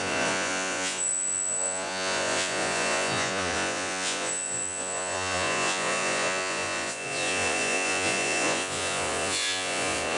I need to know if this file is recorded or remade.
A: remade